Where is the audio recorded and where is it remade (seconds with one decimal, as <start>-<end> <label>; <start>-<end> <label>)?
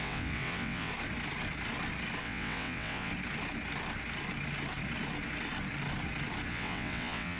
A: 0.0-0.9 remade; 0.9-2.2 recorded; 2.2-3.1 remade; 3.1-6.5 recorded; 6.5-7.4 remade